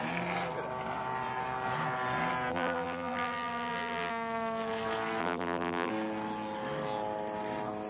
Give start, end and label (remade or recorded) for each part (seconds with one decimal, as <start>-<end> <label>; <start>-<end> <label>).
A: 0.0-2.5 recorded; 2.5-4.1 remade; 4.1-5.2 recorded; 5.2-5.9 remade; 5.9-7.9 recorded